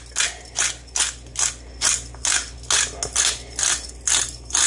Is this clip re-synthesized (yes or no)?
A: no